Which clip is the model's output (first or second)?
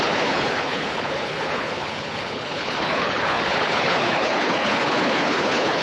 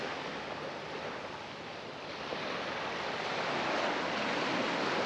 first